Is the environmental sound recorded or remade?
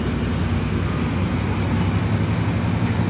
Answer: recorded